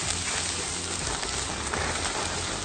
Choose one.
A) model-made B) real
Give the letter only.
B